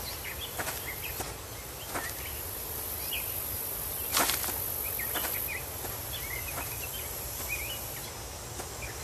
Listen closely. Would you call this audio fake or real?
real